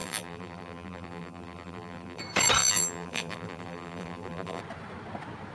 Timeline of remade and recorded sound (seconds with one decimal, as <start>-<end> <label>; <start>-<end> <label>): 0.0-2.2 remade; 2.2-2.6 recorded; 2.6-4.6 remade; 4.6-5.5 recorded